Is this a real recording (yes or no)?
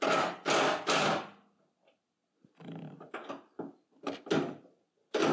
yes